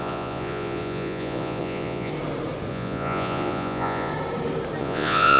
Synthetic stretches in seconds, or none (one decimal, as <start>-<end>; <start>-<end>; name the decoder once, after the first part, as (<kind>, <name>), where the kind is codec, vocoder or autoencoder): 0.0-2.1 (vocoder, Vocos); 2.7-4.1; 4.8-5.4